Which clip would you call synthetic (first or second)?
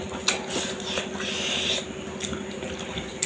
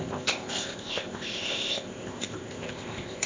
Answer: second